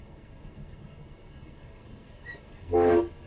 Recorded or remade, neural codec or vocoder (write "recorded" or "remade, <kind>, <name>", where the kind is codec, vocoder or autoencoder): remade, codec, SNAC